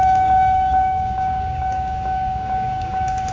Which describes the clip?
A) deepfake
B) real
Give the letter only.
A